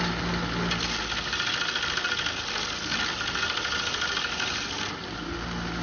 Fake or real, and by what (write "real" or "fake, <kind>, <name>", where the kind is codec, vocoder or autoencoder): real